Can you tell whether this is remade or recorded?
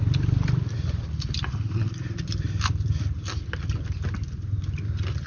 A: recorded